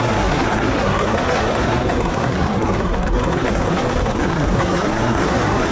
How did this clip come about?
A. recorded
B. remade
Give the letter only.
B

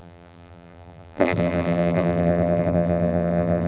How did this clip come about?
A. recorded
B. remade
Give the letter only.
B